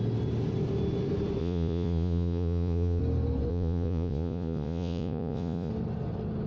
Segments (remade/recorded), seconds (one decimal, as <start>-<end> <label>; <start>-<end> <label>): 0.0-1.4 recorded; 1.4-3.0 remade; 3.0-3.5 recorded; 3.5-5.7 remade; 5.7-6.5 recorded

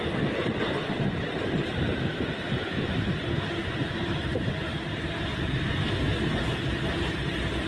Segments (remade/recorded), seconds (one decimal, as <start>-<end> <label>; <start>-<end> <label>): 0.0-3.6 recorded; 3.6-4.5 remade; 4.5-5.3 recorded; 5.3-6.6 remade; 6.6-7.7 recorded

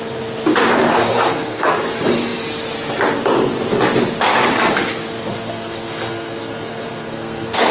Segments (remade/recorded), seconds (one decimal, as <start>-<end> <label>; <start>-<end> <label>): 0.0-0.9 recorded; 0.9-1.8 remade; 1.8-5.3 recorded; 5.3-7.7 remade

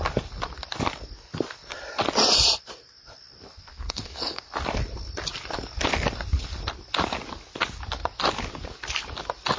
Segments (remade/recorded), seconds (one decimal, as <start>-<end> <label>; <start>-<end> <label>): 0.0-3.7 recorded; 3.7-4.4 remade; 4.4-9.6 recorded

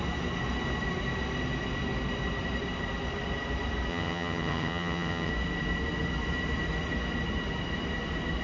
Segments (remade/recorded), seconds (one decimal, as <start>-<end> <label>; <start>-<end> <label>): 0.0-3.9 recorded; 3.9-5.3 remade; 5.3-8.4 recorded

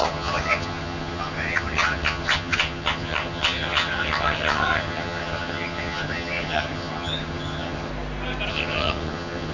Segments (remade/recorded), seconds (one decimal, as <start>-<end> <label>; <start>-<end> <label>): 0.0-7.9 remade; 7.9-8.5 recorded; 8.5-9.5 remade

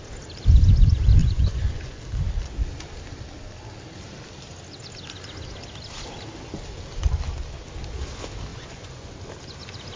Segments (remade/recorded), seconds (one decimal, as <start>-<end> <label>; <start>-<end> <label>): 0.0-1.2 recorded; 1.2-2.0 remade; 2.0-8.5 recorded; 8.5-9.1 remade; 9.1-10.0 recorded